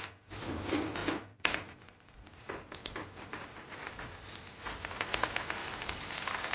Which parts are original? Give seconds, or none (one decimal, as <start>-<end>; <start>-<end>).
0.0-1.0; 2.3-2.8; 4.0-5.6; 6.1-6.5